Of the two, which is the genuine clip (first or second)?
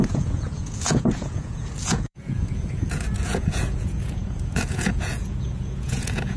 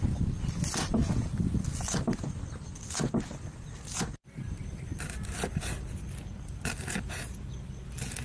second